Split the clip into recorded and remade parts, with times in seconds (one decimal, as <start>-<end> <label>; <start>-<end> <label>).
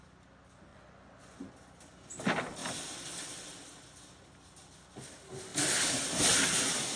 0.0-0.7 recorded; 0.7-1.5 remade; 1.5-7.0 recorded